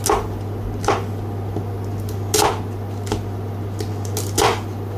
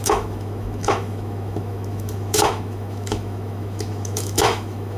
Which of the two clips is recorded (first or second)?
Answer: first